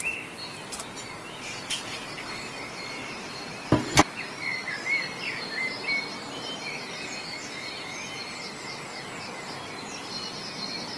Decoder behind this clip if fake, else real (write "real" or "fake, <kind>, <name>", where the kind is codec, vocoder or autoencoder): real